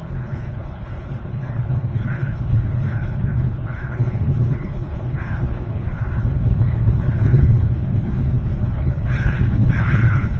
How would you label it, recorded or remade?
remade